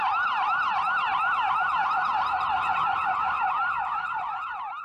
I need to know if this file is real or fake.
real